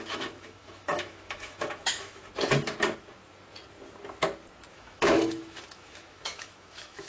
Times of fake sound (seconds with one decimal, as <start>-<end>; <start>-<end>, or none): 0.0-2.2; 4.7-7.1